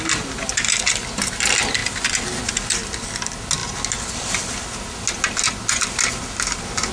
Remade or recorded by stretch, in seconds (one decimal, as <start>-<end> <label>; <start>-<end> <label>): 0.0-6.9 recorded